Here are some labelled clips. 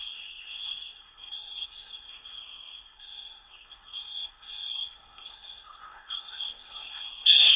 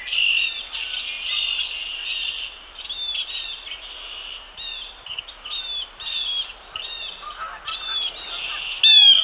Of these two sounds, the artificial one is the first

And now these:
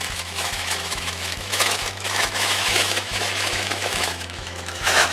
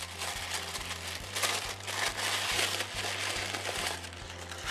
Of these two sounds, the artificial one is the first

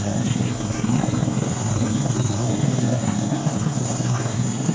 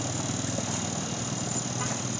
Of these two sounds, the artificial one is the first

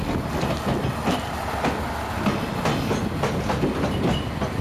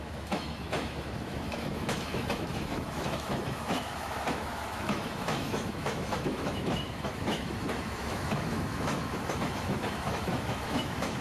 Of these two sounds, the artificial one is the second